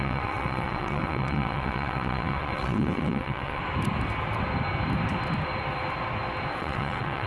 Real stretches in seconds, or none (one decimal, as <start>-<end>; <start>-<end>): 3.6-6.6

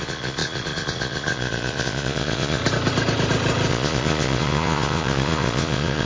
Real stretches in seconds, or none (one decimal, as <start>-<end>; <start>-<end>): 2.6-3.7

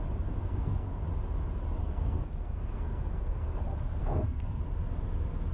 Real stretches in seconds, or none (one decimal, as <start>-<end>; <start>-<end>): 0.0-0.4; 1.0-1.8; 3.6-4.0; 4.6-5.5

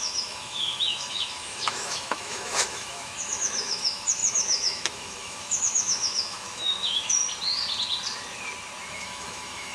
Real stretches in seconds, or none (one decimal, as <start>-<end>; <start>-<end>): 7.2-8.9

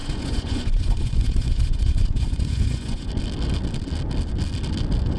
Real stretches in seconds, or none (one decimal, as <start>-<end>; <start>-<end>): 3.1-5.2